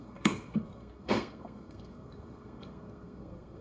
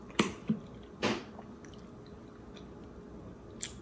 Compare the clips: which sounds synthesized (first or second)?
first